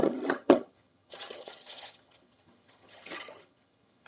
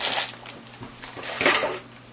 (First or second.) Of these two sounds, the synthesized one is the first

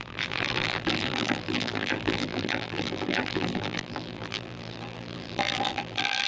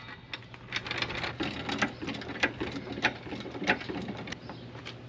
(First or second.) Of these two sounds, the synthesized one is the first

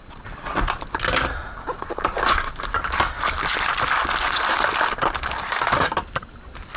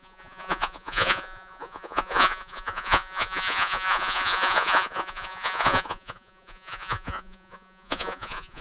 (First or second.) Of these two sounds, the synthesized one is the second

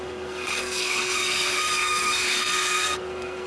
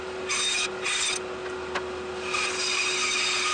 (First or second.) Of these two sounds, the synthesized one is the first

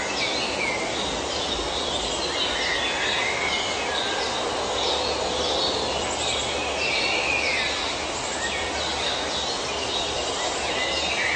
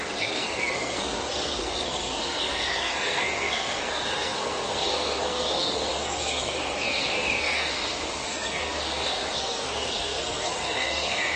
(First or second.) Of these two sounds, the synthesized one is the second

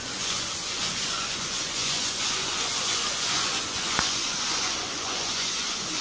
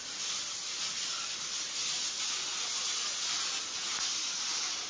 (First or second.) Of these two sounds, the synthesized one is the first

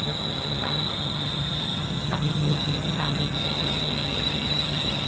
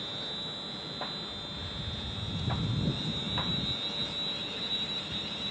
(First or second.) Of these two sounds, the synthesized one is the first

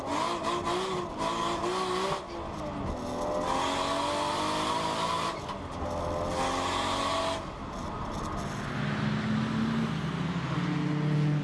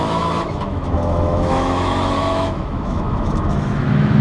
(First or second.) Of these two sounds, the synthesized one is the second